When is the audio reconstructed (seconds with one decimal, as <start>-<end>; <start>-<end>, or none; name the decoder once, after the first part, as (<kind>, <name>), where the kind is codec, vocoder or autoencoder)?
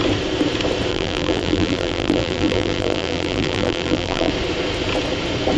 0.9-4.3 (vocoder, BigVGAN v2)